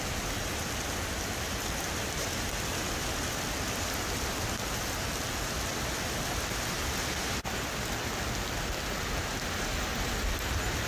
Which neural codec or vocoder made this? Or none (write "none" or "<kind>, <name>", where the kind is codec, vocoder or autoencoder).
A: none